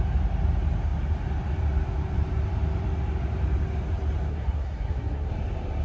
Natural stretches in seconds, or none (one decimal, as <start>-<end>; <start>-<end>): 0.0-4.3; 5.3-5.8